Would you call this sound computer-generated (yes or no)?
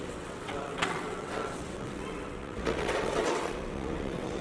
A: yes